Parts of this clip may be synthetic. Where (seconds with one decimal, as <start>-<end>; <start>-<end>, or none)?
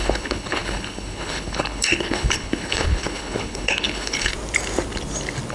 0.0-4.3